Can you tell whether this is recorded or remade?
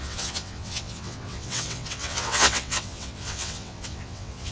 remade